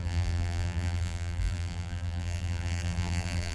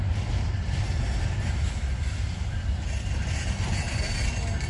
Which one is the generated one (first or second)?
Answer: first